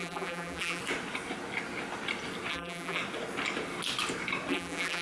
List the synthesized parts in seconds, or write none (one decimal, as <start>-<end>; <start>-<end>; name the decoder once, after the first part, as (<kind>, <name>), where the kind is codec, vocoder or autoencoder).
0.0-0.8 (vocoder, BigVGAN v2); 2.5-3.0; 4.5-5.0